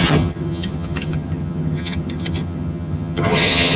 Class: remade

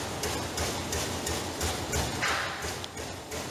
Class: recorded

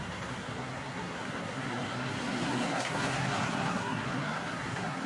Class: remade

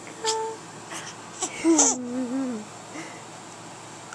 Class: recorded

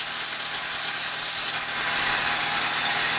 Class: recorded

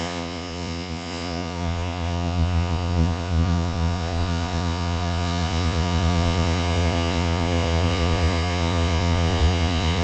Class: remade